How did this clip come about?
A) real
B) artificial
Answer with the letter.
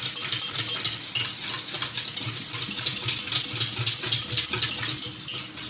A